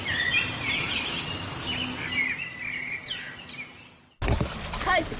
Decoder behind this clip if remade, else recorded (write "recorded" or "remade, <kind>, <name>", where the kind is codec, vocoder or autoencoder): recorded